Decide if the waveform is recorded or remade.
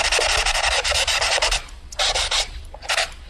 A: recorded